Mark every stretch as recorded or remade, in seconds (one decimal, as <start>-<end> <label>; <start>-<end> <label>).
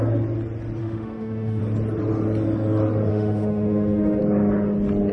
0.0-0.8 recorded; 0.8-1.6 remade; 1.6-3.1 recorded; 3.1-4.2 remade; 4.2-5.1 recorded